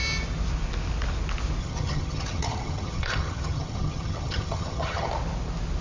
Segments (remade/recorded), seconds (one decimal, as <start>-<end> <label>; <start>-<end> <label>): 0.0-1.6 recorded; 1.6-5.1 remade; 5.1-5.8 recorded